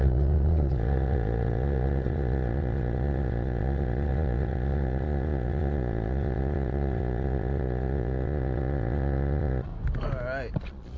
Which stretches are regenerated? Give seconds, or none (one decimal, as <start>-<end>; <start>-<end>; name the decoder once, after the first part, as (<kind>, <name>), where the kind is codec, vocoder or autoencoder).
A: 0.0-9.7 (vocoder, Vocos); 10.6-11.0